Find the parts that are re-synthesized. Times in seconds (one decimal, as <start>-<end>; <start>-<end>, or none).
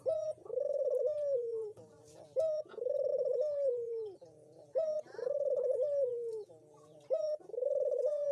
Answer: 0.0-8.3